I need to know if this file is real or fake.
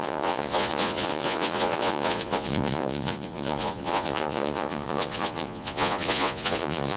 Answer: fake